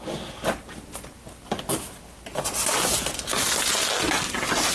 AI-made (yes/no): no